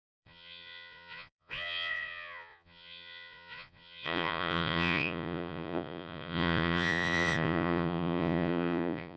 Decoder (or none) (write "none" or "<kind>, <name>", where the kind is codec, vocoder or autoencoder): vocoder, Vocos